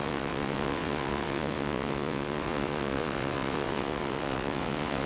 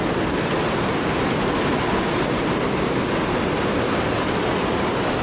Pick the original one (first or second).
second